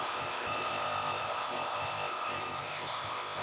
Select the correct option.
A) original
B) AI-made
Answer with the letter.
B